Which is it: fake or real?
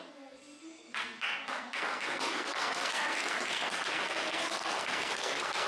fake